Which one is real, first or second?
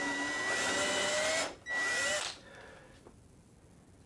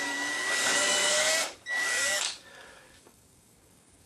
first